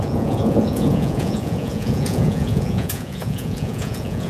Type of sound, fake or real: fake